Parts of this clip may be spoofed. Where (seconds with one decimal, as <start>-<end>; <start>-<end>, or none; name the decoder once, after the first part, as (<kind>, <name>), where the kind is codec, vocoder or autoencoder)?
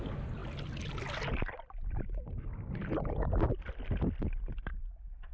none